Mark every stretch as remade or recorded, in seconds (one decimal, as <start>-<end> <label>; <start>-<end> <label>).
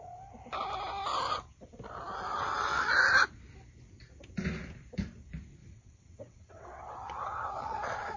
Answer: 0.0-2.3 recorded; 2.3-2.9 remade; 2.9-5.6 recorded; 5.6-8.2 remade